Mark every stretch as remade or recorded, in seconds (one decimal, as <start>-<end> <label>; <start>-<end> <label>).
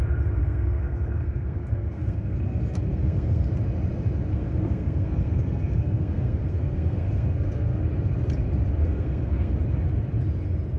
0.0-0.4 recorded; 0.4-3.5 remade; 3.5-4.3 recorded; 4.3-7.8 remade; 7.8-8.8 recorded; 8.8-9.5 remade; 9.5-10.8 recorded